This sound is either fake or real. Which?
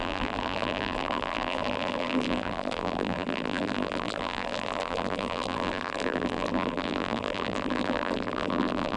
fake